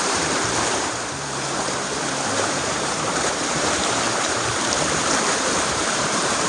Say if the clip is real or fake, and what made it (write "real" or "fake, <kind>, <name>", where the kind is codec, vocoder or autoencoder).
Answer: fake, vocoder, BigVGAN v2